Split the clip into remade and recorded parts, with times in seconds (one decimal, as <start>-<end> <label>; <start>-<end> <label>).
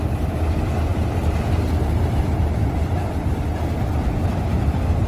0.0-0.9 recorded; 0.9-3.3 remade; 3.3-5.1 recorded